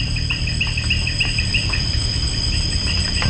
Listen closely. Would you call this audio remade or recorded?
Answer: remade